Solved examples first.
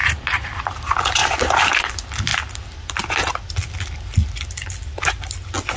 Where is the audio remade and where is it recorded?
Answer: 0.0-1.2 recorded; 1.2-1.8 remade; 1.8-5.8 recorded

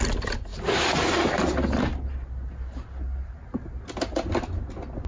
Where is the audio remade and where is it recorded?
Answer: 0.0-5.1 recorded

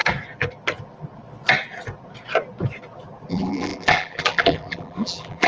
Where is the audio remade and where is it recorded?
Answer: 0.0-3.3 recorded; 3.3-5.5 remade

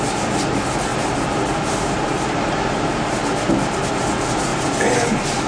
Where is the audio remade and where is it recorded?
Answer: 0.0-0.9 recorded; 0.9-3.9 remade; 3.9-4.5 recorded; 4.5-5.1 remade; 5.1-5.5 recorded

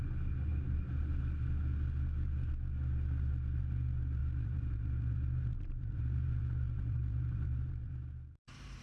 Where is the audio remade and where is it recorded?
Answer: 0.0-4.2 recorded; 4.2-8.8 remade

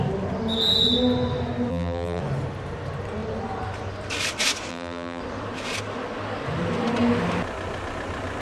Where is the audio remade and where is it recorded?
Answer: 0.0-1.7 recorded; 1.7-2.2 remade; 2.2-4.7 recorded; 4.7-5.2 remade; 5.2-8.4 recorded